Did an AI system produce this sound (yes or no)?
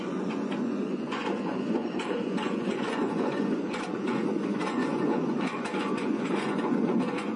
yes